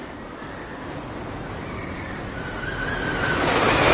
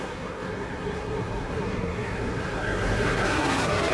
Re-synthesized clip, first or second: second